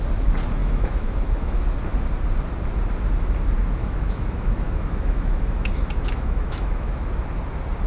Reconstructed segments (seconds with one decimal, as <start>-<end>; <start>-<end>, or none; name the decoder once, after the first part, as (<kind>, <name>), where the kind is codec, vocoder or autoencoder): 0.6-1.6 (autoencoder, DAC-VAE); 3.8-7.1